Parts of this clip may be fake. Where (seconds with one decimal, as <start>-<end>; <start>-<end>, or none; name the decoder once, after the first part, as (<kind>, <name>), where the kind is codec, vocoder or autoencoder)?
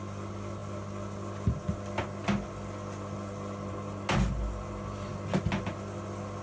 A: none